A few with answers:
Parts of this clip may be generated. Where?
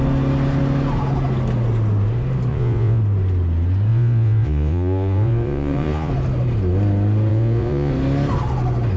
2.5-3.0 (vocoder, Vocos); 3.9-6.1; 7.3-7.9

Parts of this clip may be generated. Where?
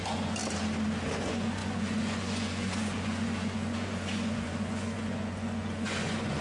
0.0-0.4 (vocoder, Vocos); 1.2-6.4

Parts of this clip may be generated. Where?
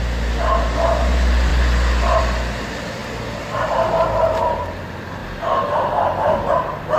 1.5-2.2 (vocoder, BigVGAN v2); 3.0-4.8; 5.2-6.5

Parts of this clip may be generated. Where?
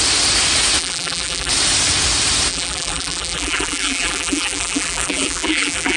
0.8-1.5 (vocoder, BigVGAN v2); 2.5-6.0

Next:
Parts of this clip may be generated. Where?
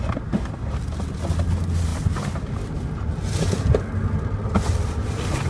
none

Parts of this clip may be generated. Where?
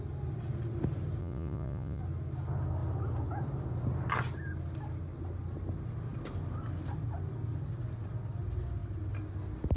1.2-2.0 (vocoder, Vocos)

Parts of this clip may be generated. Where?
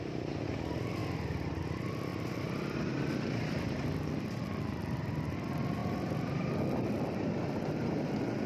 0.0-8.5 (vocoder, BigVGAN v2)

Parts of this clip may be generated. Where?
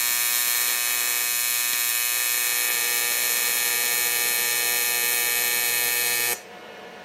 none